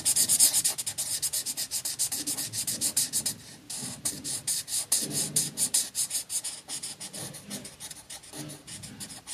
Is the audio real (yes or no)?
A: yes